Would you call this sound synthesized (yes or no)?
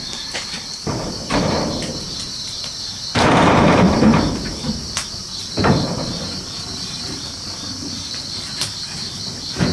yes